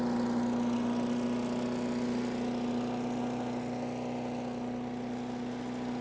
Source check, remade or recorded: recorded